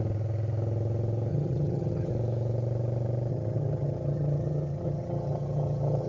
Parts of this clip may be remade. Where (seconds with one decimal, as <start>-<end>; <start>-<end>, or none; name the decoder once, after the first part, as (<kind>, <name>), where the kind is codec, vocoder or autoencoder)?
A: 1.3-2.1 (vocoder, HiFi-GAN); 3.3-6.1